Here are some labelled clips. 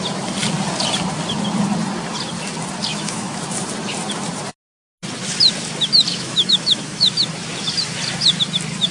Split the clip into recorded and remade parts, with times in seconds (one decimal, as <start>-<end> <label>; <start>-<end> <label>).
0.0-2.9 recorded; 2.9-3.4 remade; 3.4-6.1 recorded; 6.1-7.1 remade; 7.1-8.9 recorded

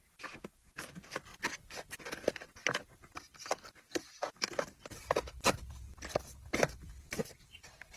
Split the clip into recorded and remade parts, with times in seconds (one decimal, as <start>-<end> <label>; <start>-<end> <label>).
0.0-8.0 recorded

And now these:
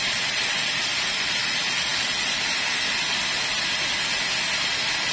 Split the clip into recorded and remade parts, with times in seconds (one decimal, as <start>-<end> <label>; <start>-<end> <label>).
0.0-5.1 recorded

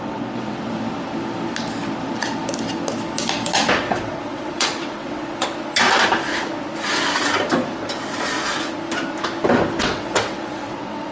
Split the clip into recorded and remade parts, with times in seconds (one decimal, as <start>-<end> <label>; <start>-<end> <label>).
0.0-0.7 remade; 0.7-3.8 recorded; 3.8-5.6 remade; 5.6-9.8 recorded; 9.8-11.1 remade

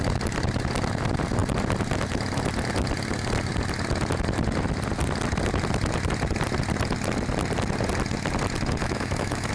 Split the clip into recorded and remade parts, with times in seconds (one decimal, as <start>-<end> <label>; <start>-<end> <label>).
0.0-8.8 recorded; 8.8-9.5 remade

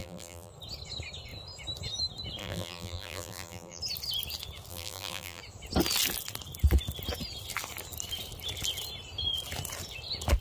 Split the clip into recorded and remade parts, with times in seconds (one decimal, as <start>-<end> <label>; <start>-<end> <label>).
0.0-0.5 remade; 0.5-2.4 recorded; 2.4-3.8 remade; 3.8-4.7 recorded; 4.7-5.4 remade; 5.4-10.4 recorded